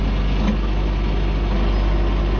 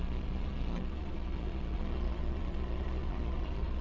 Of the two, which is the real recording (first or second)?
first